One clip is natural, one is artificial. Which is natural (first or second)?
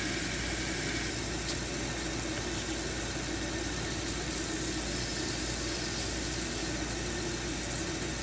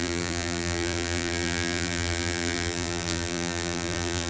first